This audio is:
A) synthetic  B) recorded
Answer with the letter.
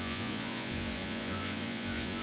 A